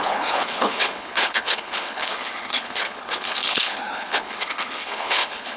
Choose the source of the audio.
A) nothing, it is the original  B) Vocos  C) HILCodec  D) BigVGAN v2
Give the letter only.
C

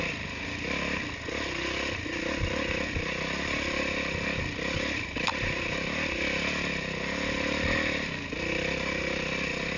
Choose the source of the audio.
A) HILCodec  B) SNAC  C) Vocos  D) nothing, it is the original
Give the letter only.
D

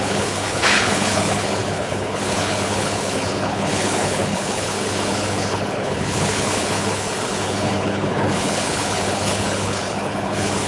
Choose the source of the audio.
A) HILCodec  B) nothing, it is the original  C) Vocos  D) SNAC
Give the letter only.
A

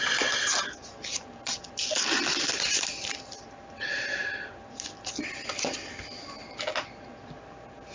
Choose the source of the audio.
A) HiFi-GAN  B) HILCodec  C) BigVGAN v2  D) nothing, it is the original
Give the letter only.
D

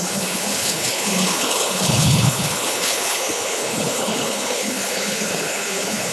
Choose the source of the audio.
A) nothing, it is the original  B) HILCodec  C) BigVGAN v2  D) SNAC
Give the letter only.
B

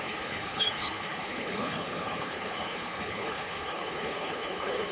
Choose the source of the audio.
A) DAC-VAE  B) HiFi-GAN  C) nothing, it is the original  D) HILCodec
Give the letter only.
D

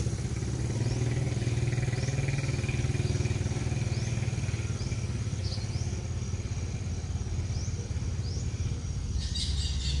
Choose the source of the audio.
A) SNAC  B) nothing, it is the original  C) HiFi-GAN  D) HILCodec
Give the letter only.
B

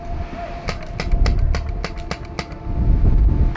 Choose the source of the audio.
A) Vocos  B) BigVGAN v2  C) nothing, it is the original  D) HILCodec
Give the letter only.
C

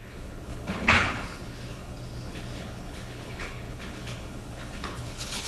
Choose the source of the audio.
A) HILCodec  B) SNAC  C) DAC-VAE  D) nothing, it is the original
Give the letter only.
A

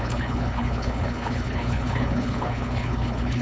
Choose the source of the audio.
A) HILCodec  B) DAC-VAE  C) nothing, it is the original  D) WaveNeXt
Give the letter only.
A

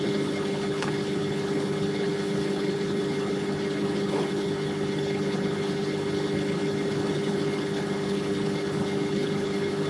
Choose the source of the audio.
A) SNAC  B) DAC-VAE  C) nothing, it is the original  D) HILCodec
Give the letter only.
D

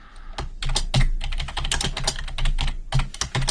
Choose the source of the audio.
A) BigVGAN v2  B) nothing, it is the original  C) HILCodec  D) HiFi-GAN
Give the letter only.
B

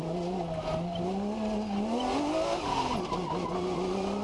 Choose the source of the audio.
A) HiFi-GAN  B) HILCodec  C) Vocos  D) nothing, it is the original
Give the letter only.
D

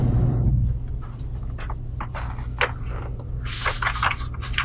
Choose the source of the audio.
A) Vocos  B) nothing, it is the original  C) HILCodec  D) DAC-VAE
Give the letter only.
B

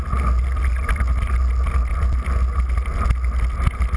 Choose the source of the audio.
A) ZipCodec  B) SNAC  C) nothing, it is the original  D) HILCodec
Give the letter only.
C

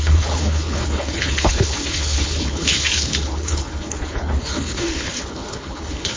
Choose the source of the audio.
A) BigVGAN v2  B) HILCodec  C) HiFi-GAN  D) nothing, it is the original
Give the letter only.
B